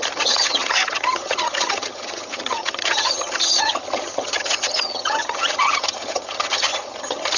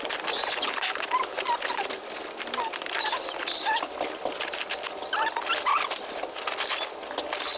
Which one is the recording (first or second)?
second